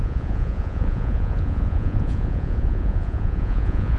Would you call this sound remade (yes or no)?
yes